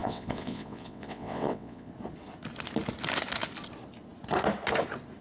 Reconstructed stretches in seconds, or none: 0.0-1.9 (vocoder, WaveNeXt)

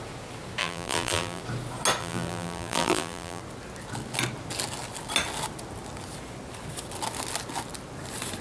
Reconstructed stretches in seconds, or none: 0.6-1.4 (vocoder, BigVGAN v2); 2.0-3.4

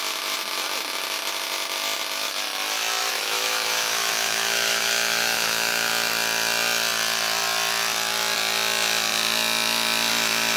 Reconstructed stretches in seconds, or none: 3.0-5.9 (autoencoder, DAC-VAE)

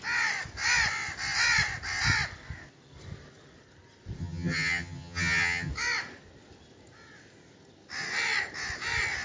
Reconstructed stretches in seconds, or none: 4.2-5.7 (vocoder, HiFi-GAN)

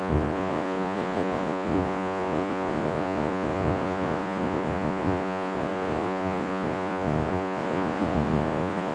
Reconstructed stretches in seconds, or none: 0.0-8.9 (vocoder, Vocos)

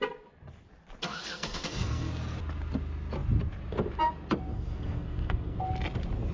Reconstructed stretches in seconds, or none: 1.1-2.1 (codec, SNAC); 4.5-5.7

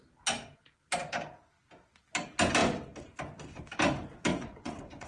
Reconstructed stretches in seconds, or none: 4.3-5.1 (vocoder, Vocos)

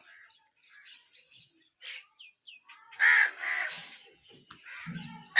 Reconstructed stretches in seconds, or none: none